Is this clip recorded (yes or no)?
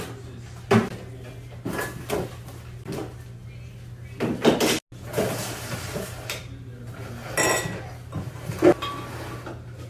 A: yes